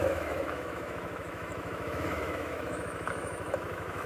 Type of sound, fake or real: fake